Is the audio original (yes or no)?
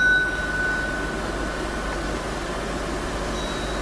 yes